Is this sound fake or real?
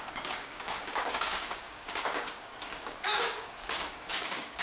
fake